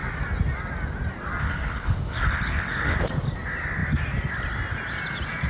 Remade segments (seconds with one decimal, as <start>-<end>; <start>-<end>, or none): 1.4-3.1